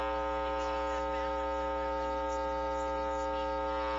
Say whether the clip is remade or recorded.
recorded